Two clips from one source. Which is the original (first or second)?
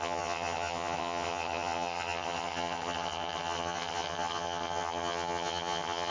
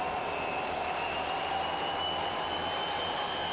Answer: second